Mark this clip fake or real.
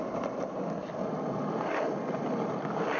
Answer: real